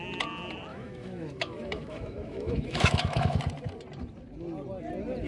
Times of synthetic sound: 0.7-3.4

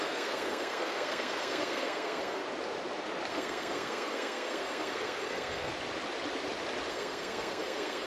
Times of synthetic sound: 0.0-2.4; 3.3-5.7; 6.9-8.1

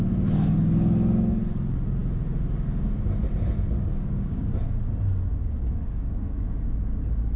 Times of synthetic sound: 3.8-4.5; 5.3-7.0

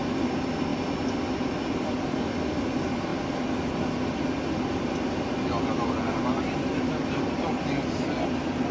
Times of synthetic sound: none

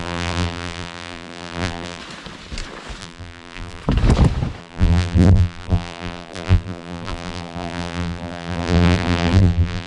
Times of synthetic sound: 0.0-2.0; 3.0-3.8; 4.6-9.9